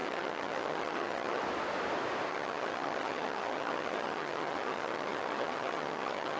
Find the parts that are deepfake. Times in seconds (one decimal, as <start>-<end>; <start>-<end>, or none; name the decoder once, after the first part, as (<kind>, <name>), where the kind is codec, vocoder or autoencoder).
0.0-1.4 (vocoder, HiFi-GAN); 2.3-6.4